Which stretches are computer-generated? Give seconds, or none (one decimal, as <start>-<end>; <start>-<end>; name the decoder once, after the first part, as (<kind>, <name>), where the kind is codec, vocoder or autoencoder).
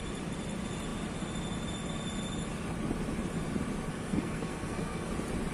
3.9-5.1 (codec, SNAC)